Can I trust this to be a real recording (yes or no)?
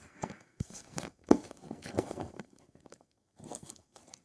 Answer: no